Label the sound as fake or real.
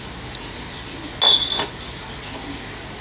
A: real